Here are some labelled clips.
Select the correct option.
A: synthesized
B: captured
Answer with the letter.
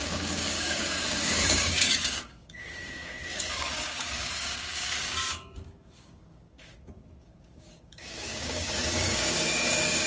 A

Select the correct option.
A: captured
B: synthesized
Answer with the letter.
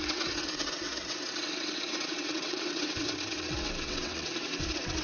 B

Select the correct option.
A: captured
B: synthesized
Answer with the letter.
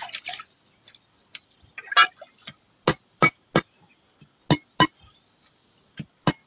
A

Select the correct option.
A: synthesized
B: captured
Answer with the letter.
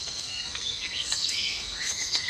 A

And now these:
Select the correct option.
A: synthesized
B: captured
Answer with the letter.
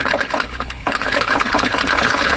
A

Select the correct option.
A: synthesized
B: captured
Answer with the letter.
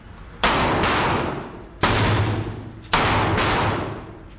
B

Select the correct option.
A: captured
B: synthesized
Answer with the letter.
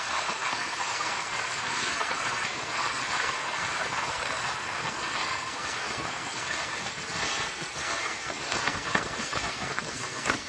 B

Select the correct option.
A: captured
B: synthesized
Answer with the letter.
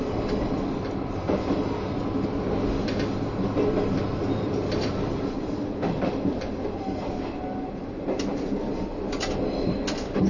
A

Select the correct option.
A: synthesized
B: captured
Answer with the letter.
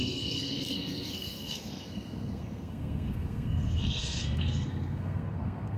A